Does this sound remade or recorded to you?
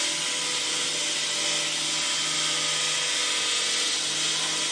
recorded